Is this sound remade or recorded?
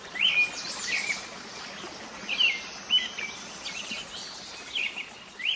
recorded